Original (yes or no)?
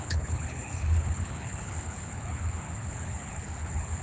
no